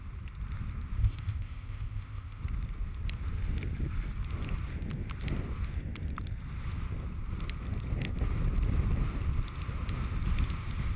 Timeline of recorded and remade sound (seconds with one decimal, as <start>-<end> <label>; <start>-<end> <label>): 0.0-1.0 recorded; 1.0-2.4 remade; 2.4-11.0 recorded